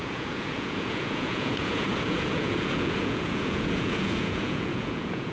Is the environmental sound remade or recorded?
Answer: remade